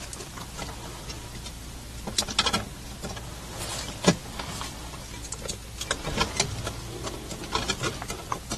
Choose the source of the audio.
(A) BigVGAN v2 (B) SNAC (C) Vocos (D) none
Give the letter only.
D